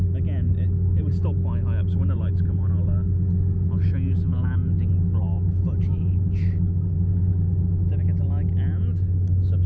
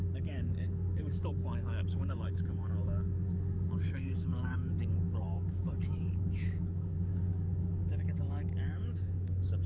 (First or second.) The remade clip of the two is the second